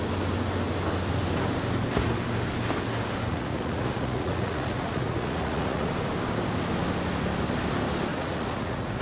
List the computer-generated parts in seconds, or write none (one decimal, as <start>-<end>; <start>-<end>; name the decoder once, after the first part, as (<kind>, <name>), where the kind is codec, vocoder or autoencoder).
3.3-5.9 (vocoder, Vocos); 8.1-9.0